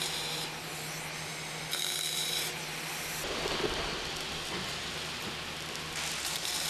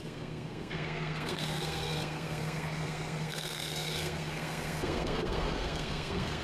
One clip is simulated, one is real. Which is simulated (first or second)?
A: second